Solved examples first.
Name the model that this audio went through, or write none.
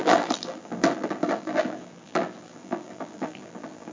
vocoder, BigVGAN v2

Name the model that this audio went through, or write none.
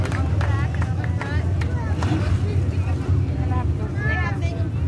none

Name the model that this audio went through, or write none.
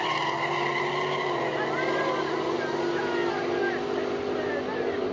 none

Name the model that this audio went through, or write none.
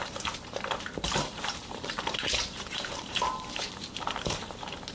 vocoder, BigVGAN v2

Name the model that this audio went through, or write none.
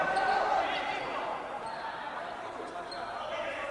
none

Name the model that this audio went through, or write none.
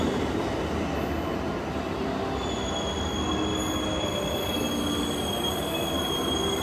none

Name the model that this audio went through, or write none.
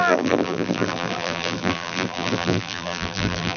vocoder, BigVGAN v2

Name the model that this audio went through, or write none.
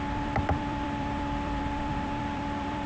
vocoder, BigVGAN v2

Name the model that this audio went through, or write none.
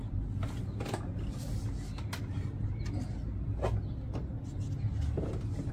none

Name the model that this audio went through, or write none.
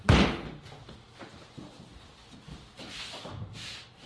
none